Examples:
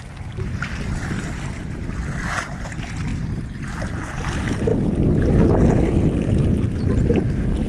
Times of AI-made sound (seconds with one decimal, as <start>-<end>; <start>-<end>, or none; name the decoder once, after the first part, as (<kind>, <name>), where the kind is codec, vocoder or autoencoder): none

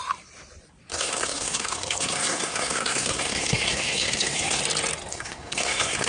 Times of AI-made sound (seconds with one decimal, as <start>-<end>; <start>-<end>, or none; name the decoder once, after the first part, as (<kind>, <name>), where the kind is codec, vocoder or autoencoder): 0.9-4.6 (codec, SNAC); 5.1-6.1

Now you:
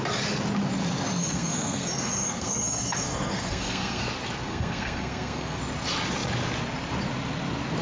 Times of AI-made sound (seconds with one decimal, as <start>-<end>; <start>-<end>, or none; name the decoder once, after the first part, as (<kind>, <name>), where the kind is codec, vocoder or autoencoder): 1.2-4.0 (codec, SNAC); 4.5-5.6